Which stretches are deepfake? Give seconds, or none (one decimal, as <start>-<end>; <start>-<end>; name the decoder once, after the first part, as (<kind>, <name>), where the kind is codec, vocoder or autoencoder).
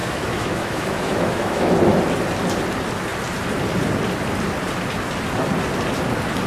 0.0-1.7 (autoencoder, DAC-VAE)